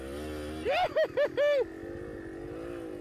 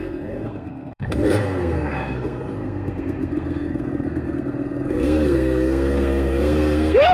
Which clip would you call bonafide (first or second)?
first